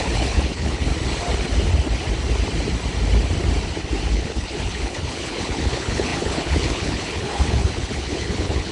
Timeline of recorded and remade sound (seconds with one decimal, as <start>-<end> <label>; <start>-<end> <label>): 0.0-0.9 remade; 0.9-4.1 recorded; 4.1-8.7 remade